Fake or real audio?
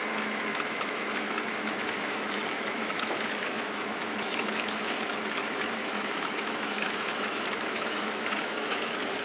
fake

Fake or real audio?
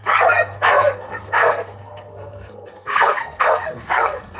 fake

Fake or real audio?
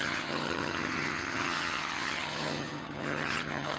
fake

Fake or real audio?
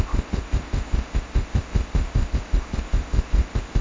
fake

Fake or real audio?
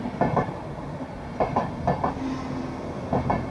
real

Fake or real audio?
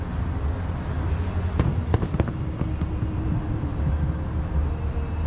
real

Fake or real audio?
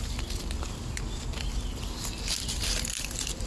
fake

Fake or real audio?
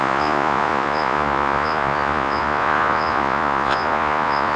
fake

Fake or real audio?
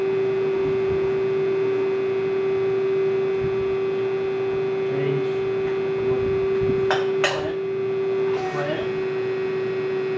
real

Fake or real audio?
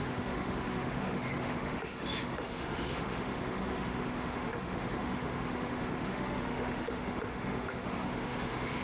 fake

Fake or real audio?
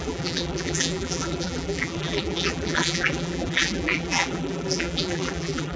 fake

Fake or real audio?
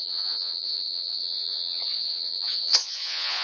fake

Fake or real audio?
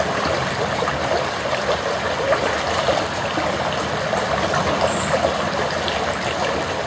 real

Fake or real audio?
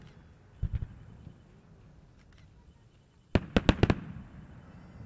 real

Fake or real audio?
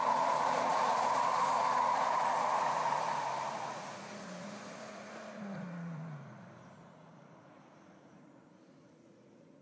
fake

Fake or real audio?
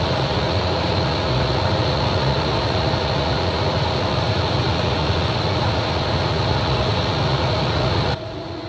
fake